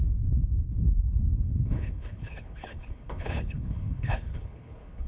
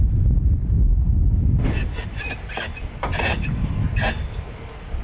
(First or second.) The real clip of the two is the second